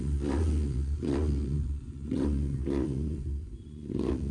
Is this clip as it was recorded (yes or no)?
no